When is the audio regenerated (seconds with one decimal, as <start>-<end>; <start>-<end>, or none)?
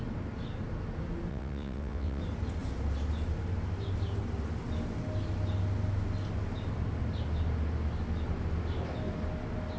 1.3-2.2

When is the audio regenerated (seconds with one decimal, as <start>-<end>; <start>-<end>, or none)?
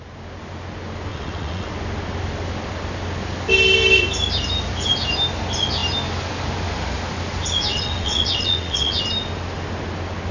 1.1-1.7; 7.7-9.0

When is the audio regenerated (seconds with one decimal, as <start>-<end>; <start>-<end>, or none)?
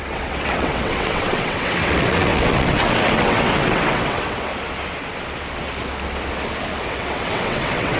0.0-4.5; 6.8-8.0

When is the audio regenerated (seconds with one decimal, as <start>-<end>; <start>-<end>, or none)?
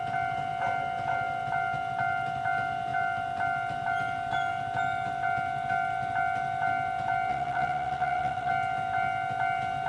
7.3-8.5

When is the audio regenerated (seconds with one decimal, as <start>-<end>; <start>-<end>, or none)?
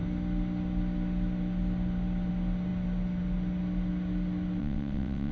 4.6-5.3